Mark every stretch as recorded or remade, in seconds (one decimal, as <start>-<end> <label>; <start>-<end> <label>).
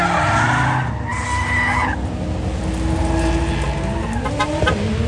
0.0-5.1 recorded